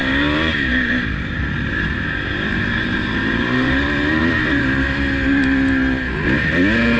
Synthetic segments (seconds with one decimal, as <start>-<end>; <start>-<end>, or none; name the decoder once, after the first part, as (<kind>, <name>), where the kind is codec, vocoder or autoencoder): 0.0-4.2 (vocoder, BigVGAN v2)